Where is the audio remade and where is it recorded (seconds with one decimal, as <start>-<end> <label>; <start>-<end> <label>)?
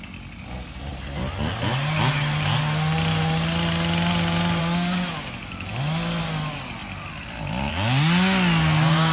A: 0.0-9.1 recorded